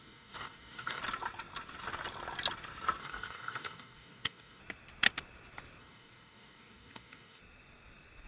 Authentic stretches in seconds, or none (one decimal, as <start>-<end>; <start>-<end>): 1.0-3.0; 4.6-5.8; 7.4-8.3